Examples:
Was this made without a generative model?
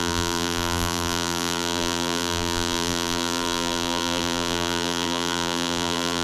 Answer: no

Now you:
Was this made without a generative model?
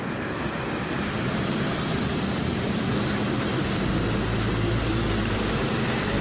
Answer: no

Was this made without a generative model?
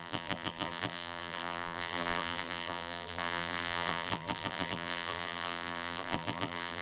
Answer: no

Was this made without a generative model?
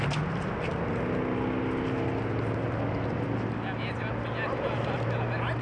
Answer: yes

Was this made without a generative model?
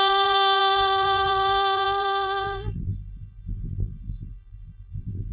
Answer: no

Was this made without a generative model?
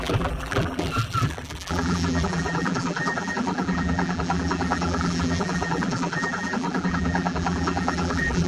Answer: no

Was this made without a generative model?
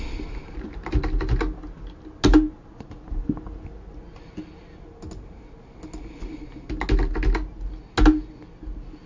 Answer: yes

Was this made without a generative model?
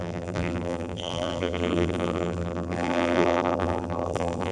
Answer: no